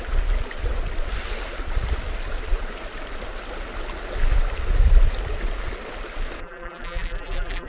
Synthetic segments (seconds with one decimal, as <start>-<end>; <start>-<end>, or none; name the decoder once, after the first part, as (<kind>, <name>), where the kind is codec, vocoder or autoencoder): 6.4-7.7 (vocoder, BigVGAN v2)